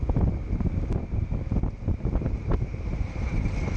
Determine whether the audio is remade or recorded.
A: recorded